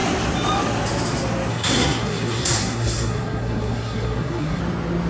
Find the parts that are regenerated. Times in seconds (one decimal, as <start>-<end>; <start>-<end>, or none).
1.5-4.6